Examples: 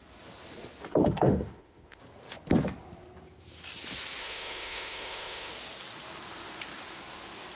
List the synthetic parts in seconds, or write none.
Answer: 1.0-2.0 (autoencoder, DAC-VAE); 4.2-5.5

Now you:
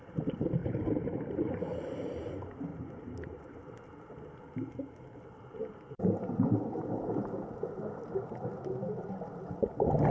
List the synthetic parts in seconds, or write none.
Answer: 0.6-2.3 (vocoder, BigVGAN v2); 2.7-3.4; 5.6-6.2

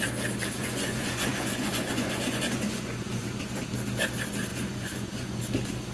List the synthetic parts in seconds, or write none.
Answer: 0.6-3.6 (vocoder, Vocos); 4.5-5.4

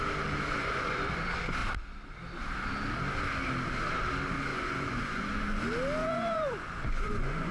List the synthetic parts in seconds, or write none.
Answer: 0.6-1.1 (vocoder, Vocos); 4.5-5.6; 6.0-7.5

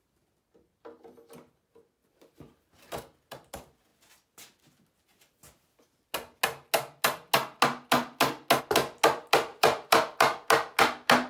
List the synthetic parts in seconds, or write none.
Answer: 2.0-3.0 (vocoder, BigVGAN v2); 9.5-10.2

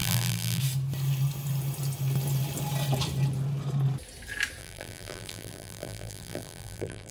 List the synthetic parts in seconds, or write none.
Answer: 0.0-0.6 (vocoder, BigVGAN v2); 4.6-7.1